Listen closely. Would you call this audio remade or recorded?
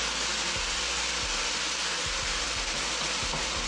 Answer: recorded